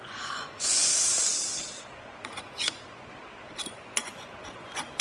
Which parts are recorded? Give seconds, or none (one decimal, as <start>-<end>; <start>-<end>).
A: 0.9-1.8; 3.1-3.7